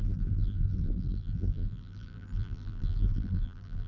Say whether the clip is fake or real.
fake